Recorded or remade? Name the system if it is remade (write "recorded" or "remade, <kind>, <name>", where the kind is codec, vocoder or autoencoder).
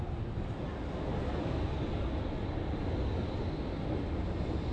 recorded